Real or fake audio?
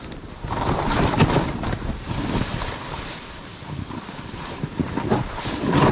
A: fake